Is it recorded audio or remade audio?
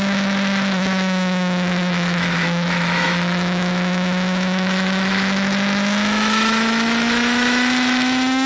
remade